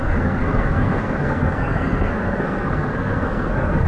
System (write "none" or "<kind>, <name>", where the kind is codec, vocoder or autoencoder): codec, SNAC